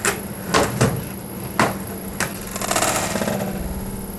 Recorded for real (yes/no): yes